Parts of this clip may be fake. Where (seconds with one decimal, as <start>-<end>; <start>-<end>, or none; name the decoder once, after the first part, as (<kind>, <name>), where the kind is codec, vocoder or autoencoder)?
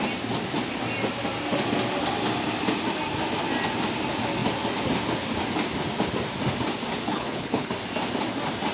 7.1-7.7 (codec, HILCodec)